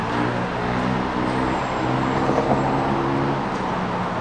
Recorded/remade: recorded